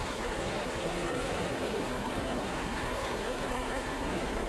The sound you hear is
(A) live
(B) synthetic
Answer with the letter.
B